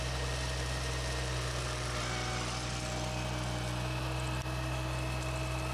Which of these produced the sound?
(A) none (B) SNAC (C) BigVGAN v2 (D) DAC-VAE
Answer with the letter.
A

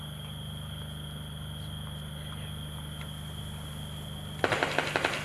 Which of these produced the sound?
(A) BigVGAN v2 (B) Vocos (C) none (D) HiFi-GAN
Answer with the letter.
C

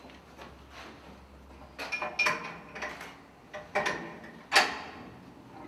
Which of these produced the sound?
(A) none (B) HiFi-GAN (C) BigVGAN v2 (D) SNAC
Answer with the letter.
A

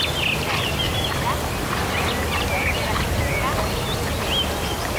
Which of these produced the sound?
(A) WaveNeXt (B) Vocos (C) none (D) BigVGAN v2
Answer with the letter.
C